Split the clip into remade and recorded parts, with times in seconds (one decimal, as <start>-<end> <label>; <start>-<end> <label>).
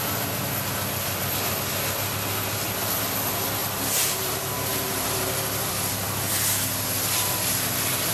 0.0-3.6 recorded; 3.6-5.7 remade; 5.7-8.1 recorded